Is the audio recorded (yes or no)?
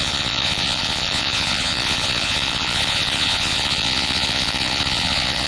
no